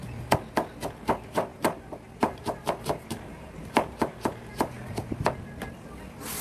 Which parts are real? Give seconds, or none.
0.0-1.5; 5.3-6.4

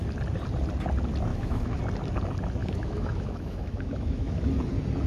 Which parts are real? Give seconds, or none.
0.0-1.3; 1.8-2.6; 4.4-5.1